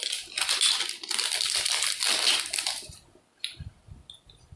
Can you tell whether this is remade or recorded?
recorded